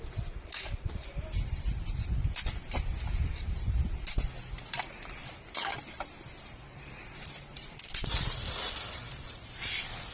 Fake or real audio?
fake